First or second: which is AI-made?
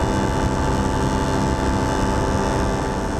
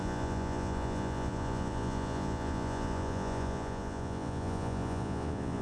second